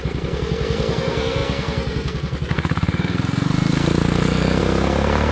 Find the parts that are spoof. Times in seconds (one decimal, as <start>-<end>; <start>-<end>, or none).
0.0-5.3